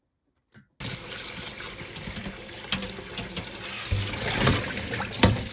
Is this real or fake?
real